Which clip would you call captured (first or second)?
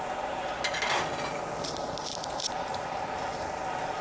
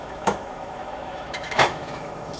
first